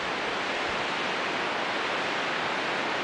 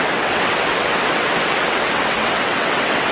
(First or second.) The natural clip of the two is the first